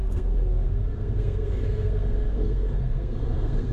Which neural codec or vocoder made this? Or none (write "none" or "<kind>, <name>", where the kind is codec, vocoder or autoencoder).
codec, SNAC